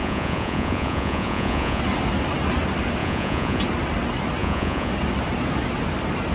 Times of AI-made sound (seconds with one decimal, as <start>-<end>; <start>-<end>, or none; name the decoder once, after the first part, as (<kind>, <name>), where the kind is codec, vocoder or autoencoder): 0.0-1.8 (vocoder, Vocos); 3.0-3.6; 4.4-4.9